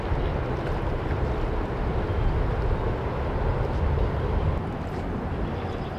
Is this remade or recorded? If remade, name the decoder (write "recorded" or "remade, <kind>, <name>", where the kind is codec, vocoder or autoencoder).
recorded